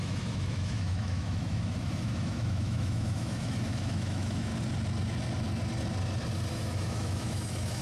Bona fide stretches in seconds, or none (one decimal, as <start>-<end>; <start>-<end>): 4.5-6.5